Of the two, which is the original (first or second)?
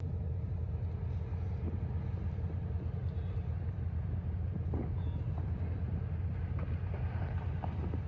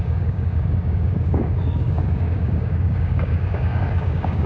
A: first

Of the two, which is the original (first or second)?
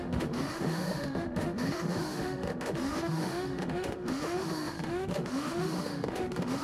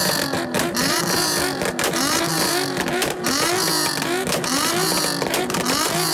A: second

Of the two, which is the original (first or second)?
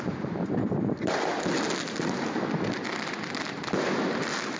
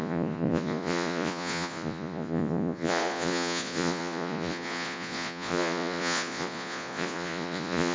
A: first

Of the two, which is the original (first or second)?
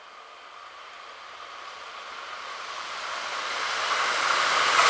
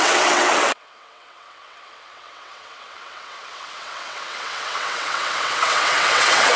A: first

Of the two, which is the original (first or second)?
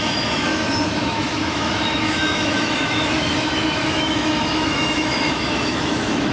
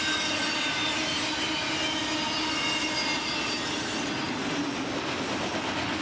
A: second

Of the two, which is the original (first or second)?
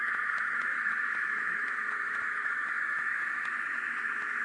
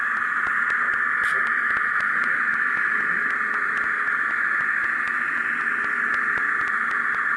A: second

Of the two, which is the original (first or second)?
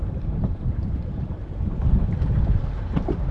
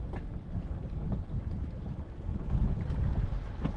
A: second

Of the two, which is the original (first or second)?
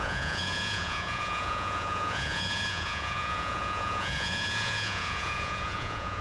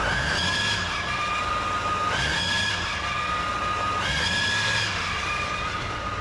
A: second